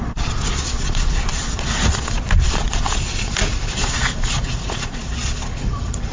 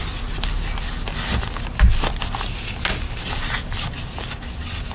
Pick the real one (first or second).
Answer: second